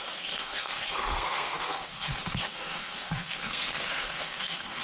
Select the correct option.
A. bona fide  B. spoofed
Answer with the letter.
B